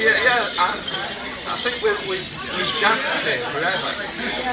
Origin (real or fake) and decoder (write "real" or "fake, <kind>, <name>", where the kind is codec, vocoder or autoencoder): real